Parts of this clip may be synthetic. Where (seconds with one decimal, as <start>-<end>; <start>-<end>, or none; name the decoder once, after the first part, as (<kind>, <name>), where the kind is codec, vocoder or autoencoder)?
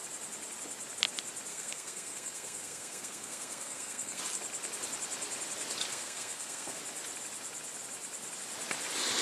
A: 1.5-4.2 (codec, SNAC); 5.9-6.8